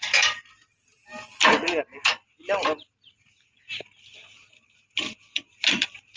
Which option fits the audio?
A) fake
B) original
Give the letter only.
B